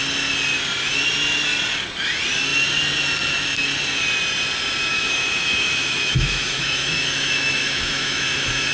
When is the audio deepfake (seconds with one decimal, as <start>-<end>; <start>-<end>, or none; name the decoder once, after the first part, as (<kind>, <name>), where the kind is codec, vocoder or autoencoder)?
4.9-8.7 (autoencoder, DAC-VAE)